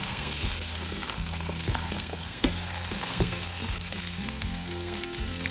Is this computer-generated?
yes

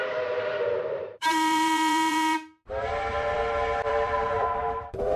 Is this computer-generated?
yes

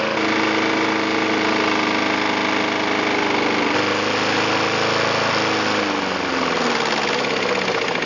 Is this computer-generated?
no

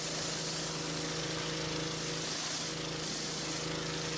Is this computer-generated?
no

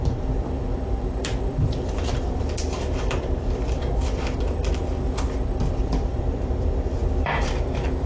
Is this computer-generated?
yes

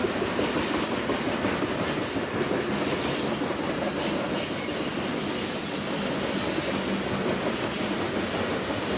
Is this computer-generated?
no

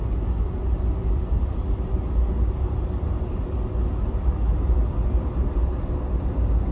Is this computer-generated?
no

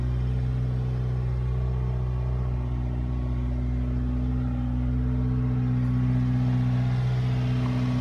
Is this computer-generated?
no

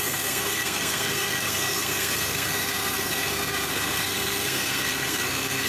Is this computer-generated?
yes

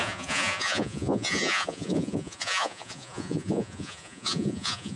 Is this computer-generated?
yes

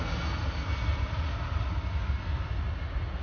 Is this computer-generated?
no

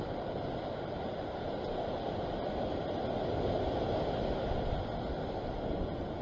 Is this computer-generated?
no